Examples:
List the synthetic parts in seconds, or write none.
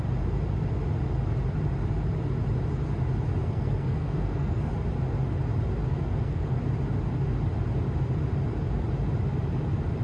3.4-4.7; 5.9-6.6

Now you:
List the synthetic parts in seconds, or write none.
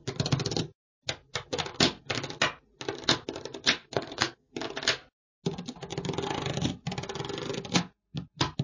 3.8-4.5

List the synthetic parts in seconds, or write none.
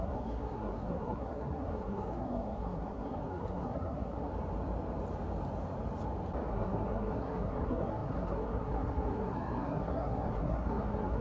0.0-4.3; 6.5-11.2